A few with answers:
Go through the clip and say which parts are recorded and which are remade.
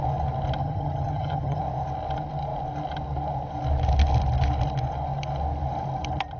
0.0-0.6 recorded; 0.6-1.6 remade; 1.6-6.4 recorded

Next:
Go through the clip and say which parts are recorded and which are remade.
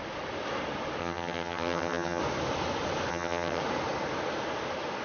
0.0-1.0 recorded; 1.0-2.2 remade; 2.2-3.1 recorded; 3.1-3.6 remade; 3.6-5.0 recorded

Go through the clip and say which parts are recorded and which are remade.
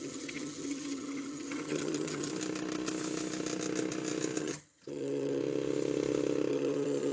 0.0-2.3 remade; 2.3-4.4 recorded; 4.4-5.4 remade; 5.4-6.5 recorded; 6.5-7.1 remade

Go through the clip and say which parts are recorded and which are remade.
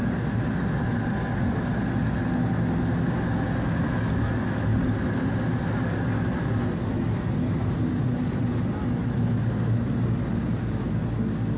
0.0-11.6 recorded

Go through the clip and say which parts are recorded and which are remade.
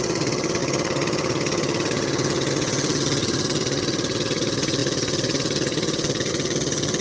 0.0-7.0 remade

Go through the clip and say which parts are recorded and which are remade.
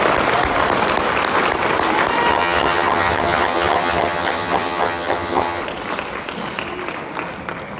0.0-2.3 recorded; 2.3-5.6 remade; 5.6-7.8 recorded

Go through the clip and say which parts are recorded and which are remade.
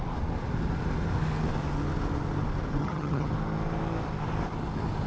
0.0-2.8 recorded; 2.8-3.3 remade; 3.3-5.1 recorded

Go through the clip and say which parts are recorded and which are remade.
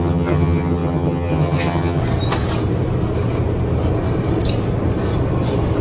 0.0-2.0 remade; 2.0-5.8 recorded